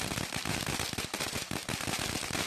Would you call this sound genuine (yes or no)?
yes